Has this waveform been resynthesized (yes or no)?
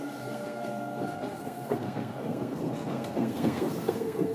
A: yes